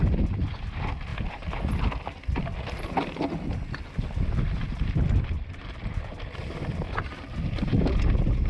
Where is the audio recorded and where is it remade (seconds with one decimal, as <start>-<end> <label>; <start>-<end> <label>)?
0.0-8.5 recorded